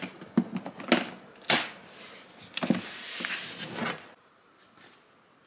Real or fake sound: real